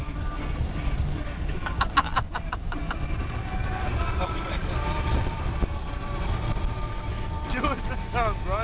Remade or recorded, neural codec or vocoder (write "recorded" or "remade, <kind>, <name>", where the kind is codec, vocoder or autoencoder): recorded